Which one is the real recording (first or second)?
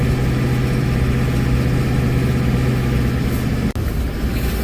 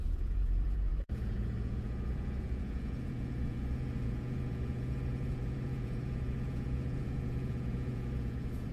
first